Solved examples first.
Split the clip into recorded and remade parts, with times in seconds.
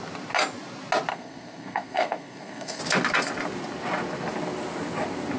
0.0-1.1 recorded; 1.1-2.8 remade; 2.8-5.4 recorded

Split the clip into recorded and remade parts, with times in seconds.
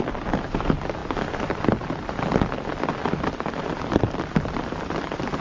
0.0-5.4 recorded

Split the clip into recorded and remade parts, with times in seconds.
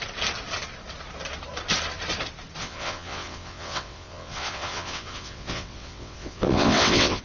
0.0-2.6 recorded; 2.6-7.2 remade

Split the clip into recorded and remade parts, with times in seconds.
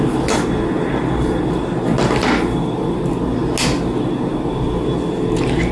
0.0-5.7 recorded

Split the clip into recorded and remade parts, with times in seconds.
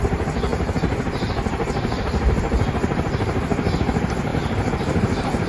0.0-5.5 recorded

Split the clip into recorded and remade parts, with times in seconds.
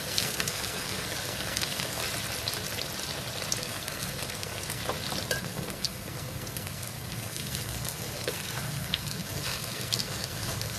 0.0-2.0 remade; 2.0-3.6 recorded; 3.6-4.8 remade; 4.8-5.4 recorded; 5.4-10.8 remade